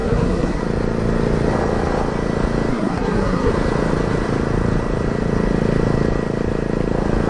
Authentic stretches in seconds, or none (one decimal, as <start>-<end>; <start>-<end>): 0.6-2.7; 3.5-7.3